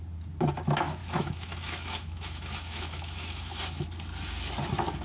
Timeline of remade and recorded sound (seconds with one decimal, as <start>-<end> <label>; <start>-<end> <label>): 0.0-1.0 recorded; 1.0-3.6 remade; 3.6-5.0 recorded